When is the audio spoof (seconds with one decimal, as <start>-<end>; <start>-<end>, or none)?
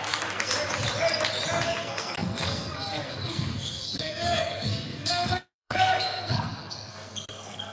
0.0-0.5; 1.8-7.7